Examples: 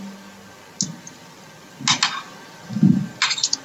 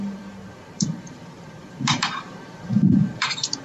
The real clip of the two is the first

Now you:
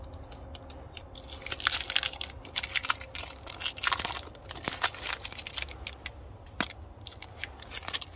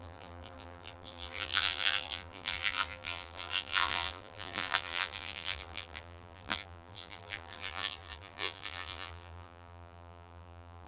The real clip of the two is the first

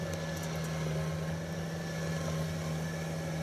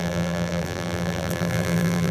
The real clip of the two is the first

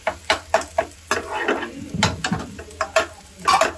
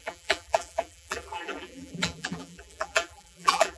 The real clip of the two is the first